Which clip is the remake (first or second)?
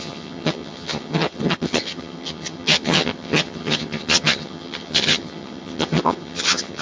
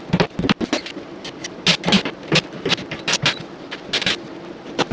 first